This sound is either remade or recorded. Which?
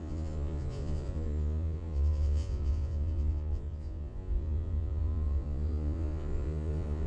remade